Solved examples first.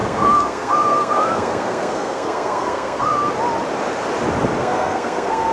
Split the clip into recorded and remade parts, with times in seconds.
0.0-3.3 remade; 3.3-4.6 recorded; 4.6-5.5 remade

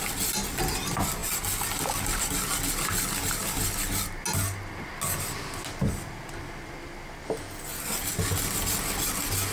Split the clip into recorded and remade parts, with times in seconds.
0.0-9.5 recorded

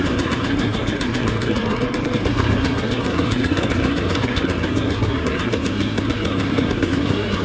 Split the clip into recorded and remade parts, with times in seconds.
0.0-7.4 remade

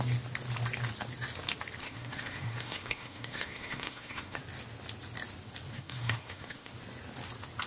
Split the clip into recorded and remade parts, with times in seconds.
0.0-1.8 recorded; 1.8-4.4 remade; 4.4-5.7 recorded; 5.7-6.7 remade; 6.7-7.7 recorded

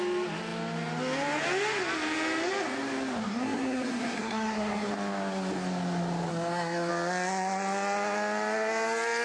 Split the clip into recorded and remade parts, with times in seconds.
0.0-3.2 recorded; 3.2-4.9 remade; 4.9-6.3 recorded; 6.3-6.9 remade; 6.9-9.2 recorded

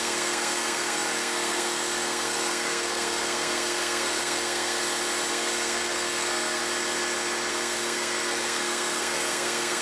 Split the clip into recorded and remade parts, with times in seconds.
0.0-4.8 remade; 4.8-5.3 recorded; 5.3-6.6 remade; 6.6-7.5 recorded; 7.5-9.8 remade